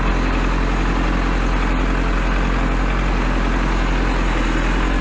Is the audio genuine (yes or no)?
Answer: yes